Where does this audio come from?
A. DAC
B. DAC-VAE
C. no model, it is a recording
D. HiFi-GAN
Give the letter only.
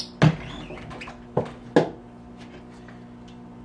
C